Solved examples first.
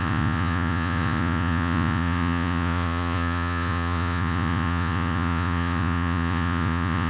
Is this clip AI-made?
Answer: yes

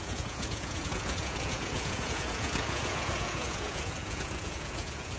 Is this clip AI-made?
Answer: yes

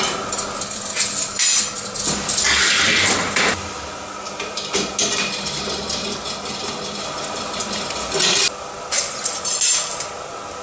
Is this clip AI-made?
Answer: no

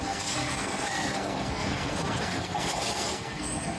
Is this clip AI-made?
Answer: yes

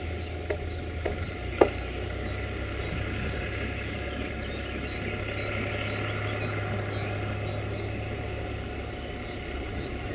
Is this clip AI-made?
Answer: no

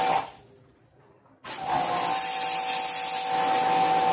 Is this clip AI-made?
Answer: no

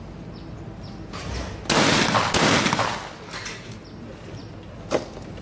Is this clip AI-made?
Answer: no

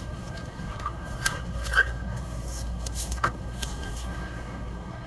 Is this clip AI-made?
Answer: yes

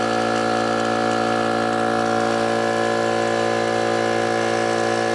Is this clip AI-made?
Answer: no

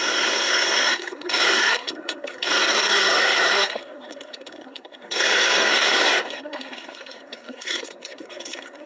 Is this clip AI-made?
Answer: yes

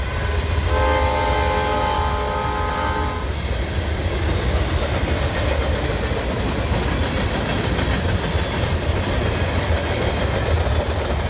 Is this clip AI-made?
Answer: no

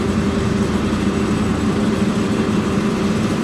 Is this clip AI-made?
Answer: yes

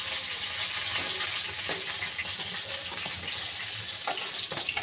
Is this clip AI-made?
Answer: no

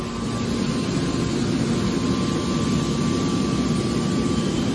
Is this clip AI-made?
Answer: no